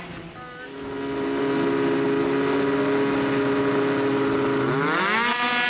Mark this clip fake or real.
real